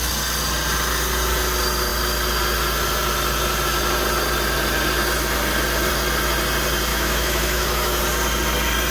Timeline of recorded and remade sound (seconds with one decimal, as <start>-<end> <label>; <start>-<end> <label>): 0.0-6.9 recorded; 6.9-8.0 remade; 8.0-8.9 recorded